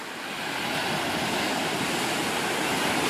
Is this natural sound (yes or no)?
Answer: yes